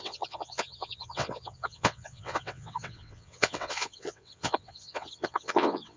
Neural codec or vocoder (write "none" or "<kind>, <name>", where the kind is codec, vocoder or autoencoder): vocoder, WaveNeXt